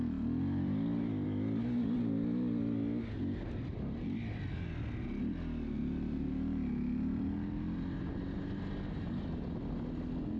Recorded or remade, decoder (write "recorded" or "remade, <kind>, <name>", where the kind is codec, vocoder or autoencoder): recorded